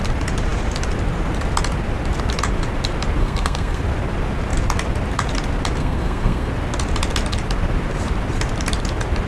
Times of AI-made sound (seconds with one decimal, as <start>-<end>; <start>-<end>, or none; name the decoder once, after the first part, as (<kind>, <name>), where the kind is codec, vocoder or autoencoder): 3.2-3.8 (codec, SNAC); 5.8-6.5